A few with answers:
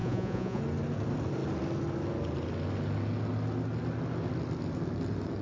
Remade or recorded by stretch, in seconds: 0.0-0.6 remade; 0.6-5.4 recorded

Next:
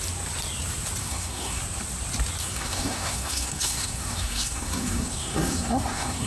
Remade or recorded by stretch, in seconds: 0.0-1.0 recorded; 1.0-1.6 remade; 1.6-2.4 recorded; 2.4-6.3 remade

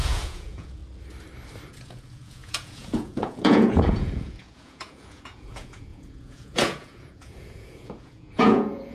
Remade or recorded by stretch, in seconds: 0.0-0.8 remade; 0.8-1.7 recorded; 1.7-8.9 remade

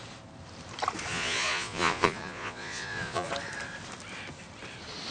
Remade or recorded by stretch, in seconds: 0.0-1.1 recorded; 1.1-3.3 remade; 3.3-5.1 recorded

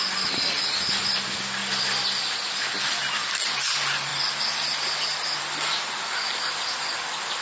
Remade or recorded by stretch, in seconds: 0.0-7.4 recorded

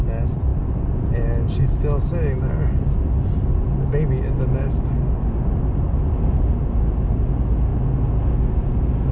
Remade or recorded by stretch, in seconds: 0.0-9.1 recorded